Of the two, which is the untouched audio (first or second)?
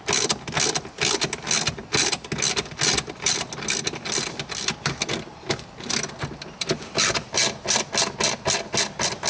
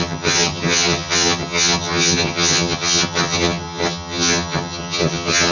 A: first